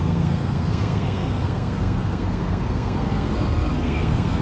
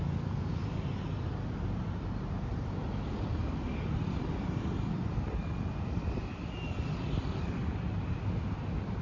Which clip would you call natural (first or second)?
second